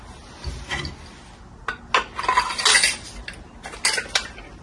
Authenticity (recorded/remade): recorded